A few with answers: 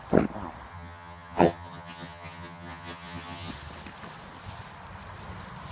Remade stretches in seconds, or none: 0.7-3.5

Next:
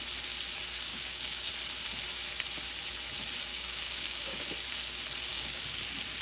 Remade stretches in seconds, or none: 0.9-1.5; 3.5-4.5; 5.3-5.8

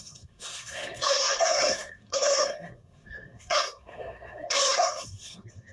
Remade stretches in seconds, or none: 0.0-5.7